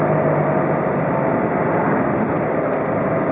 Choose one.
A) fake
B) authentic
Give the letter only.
B